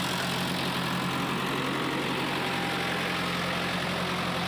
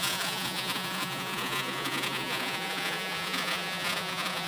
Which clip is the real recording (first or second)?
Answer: first